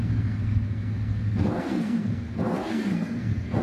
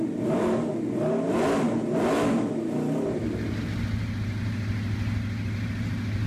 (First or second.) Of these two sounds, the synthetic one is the first